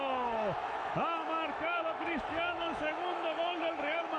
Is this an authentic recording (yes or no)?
no